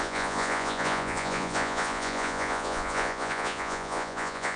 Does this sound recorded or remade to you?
remade